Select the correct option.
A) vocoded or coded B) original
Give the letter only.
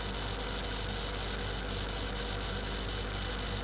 B